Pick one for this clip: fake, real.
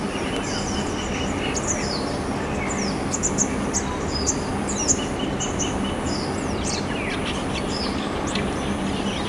real